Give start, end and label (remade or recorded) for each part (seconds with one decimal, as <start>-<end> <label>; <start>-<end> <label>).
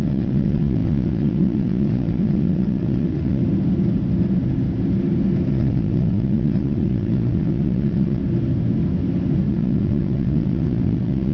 0.0-3.4 remade; 3.4-5.5 recorded; 5.5-8.2 remade; 8.2-9.5 recorded; 9.5-11.3 remade